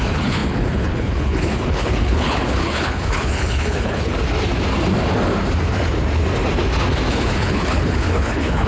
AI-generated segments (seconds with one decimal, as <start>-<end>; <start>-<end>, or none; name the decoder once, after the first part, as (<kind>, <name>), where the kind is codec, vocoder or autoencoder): 0.0-4.1 (codec, HILCodec); 7.1-8.7